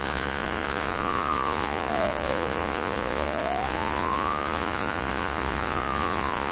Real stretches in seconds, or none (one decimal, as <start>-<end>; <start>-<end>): none